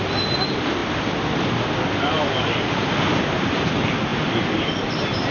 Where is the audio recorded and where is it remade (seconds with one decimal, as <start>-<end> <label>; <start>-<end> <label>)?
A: 0.0-4.1 recorded; 4.1-5.3 remade